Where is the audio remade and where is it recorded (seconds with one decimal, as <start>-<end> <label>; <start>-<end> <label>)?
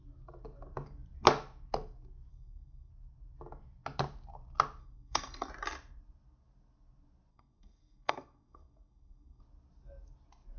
0.0-2.3 recorded; 2.3-2.9 remade; 2.9-4.8 recorded; 4.8-5.5 remade; 5.5-7.3 recorded; 7.3-9.4 remade; 9.4-10.6 recorded